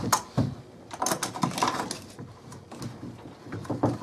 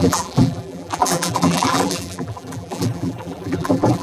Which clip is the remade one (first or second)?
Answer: second